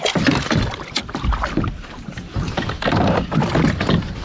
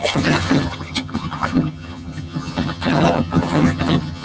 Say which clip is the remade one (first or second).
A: second